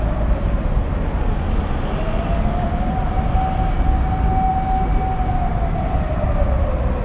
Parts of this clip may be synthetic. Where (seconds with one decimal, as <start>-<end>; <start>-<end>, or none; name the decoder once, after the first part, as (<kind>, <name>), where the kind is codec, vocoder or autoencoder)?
none